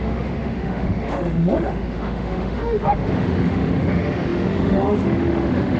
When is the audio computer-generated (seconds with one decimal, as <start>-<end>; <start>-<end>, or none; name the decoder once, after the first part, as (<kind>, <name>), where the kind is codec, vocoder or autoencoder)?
0.0-5.8 (autoencoder, DAC-VAE)